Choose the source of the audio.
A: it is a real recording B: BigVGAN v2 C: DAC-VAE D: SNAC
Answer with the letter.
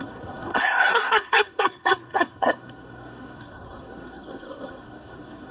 D